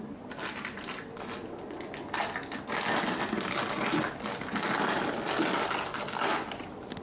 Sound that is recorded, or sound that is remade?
recorded